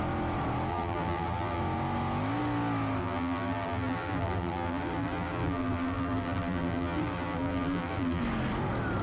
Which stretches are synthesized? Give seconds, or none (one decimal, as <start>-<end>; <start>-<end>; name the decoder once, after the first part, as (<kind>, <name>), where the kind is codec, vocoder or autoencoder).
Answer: 0.7-1.6 (vocoder, BigVGAN v2); 3.0-8.2